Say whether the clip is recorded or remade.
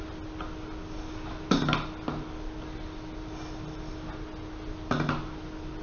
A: recorded